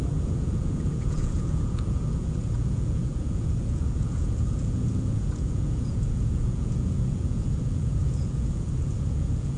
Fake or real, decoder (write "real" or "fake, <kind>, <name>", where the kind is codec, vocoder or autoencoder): fake, vocoder, Vocos